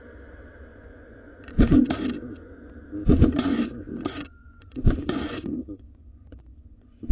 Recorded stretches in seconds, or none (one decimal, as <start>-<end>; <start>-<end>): 0.0-0.7; 1.9-3.1